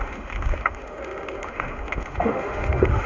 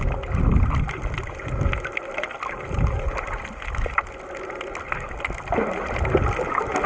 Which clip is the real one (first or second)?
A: second